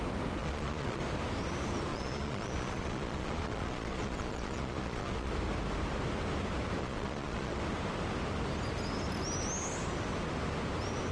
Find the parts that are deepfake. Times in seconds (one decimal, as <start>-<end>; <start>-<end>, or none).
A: 0.4-1.0; 1.9-5.3; 6.8-7.6